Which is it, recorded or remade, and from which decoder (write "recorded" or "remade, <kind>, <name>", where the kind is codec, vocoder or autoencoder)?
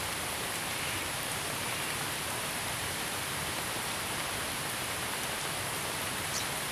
remade, vocoder, BigVGAN v2